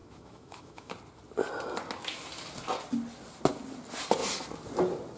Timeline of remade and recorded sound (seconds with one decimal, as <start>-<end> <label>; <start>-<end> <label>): 0.0-0.9 remade; 0.9-5.2 recorded